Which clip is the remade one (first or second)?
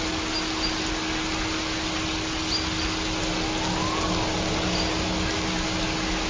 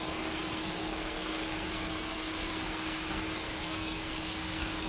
second